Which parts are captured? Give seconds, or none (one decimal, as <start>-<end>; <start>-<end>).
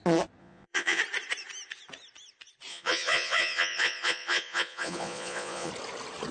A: 0.0-0.4; 1.0-2.7; 5.7-6.3